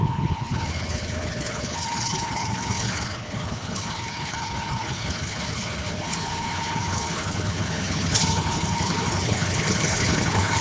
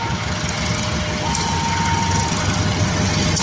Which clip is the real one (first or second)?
second